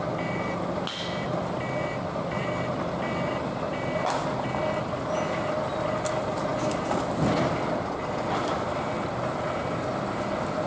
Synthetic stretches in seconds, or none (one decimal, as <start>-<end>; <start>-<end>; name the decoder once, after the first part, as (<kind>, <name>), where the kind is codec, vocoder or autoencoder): none